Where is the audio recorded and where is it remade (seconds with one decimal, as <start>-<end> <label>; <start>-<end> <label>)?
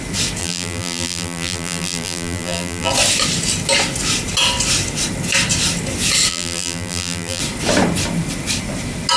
0.0-0.4 recorded; 0.4-2.9 remade; 2.9-6.3 recorded; 6.3-7.4 remade; 7.4-9.2 recorded